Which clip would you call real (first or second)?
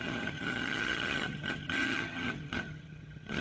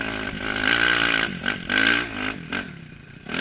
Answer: second